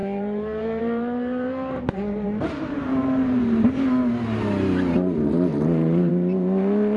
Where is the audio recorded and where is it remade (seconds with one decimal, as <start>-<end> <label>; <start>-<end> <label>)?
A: 0.0-3.4 remade; 3.4-5.5 recorded; 5.5-6.1 remade; 6.1-7.0 recorded